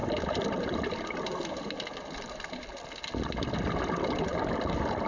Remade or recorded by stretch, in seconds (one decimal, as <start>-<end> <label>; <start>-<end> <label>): 0.0-4.3 recorded; 4.3-5.1 remade